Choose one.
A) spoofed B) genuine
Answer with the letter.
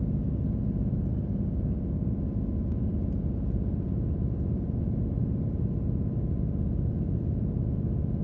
B